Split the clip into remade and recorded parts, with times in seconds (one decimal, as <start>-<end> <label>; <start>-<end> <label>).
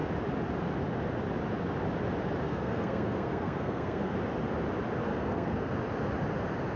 0.0-2.4 recorded; 2.4-4.1 remade; 4.1-5.1 recorded; 5.1-5.7 remade; 5.7-6.8 recorded